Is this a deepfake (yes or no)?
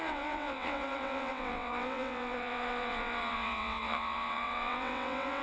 yes